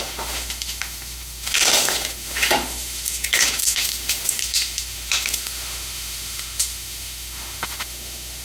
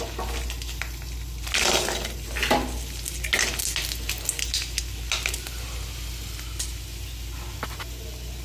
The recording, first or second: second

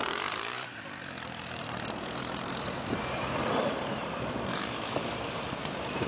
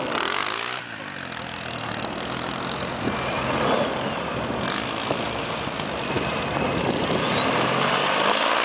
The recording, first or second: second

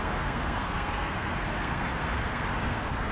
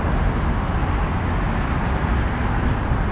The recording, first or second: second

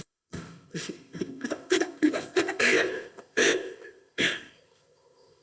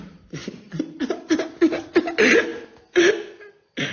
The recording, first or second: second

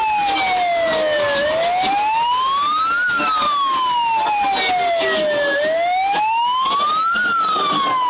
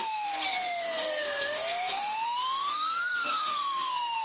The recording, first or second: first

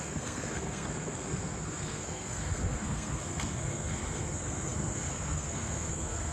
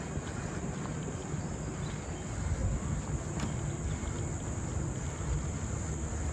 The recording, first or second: second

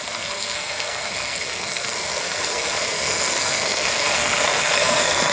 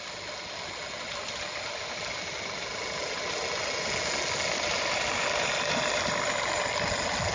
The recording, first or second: second